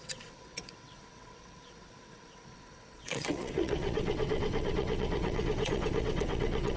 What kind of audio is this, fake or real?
fake